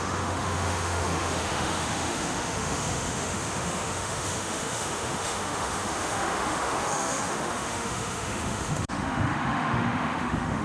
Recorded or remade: remade